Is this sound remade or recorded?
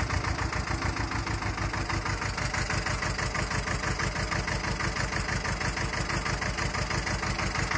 recorded